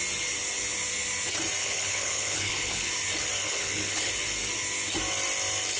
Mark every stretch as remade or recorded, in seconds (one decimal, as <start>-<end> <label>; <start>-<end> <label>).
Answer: 0.0-1.6 recorded; 1.6-2.9 remade; 2.9-3.4 recorded; 3.4-4.1 remade; 4.1-5.8 recorded